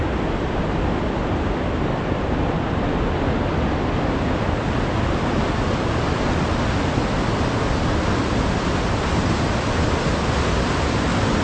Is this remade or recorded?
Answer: recorded